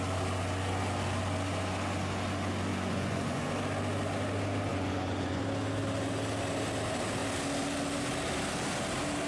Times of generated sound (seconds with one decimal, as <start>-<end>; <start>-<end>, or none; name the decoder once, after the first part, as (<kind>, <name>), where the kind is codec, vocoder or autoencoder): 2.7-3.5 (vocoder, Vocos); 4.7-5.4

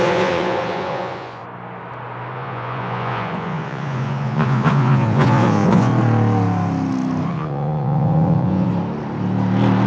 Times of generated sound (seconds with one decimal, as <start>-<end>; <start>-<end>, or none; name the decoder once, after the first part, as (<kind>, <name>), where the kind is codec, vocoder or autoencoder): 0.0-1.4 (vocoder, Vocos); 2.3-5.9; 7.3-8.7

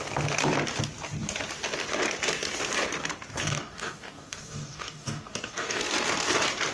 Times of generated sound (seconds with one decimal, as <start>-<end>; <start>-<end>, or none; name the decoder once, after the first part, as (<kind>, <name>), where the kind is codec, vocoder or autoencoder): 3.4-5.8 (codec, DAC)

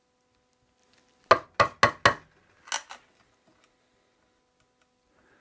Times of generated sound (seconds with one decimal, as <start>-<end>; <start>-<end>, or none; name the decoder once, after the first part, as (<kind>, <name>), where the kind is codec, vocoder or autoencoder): none

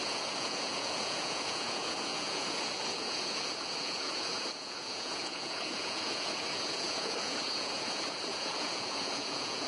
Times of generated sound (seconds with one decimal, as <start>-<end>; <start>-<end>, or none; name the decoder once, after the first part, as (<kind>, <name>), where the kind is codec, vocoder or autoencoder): 0.0-9.7 (vocoder, Vocos)